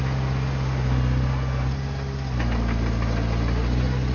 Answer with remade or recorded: recorded